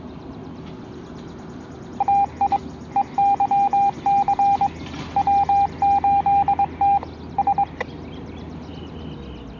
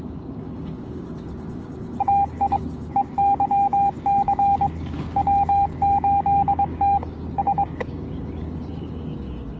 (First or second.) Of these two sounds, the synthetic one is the second